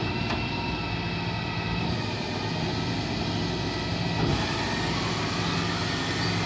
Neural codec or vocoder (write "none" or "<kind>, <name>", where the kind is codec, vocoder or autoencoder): none